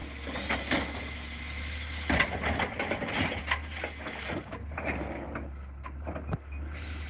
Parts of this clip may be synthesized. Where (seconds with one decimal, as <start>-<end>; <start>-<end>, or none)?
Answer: none